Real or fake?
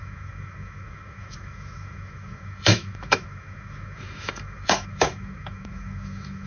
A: fake